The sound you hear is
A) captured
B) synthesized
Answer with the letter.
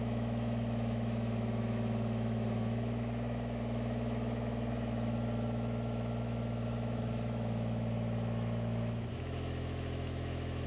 B